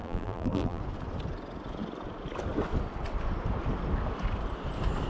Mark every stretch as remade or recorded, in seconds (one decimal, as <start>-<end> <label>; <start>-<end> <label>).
0.0-0.8 remade; 0.8-5.1 recorded